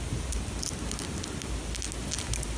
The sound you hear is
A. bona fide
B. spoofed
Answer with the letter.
A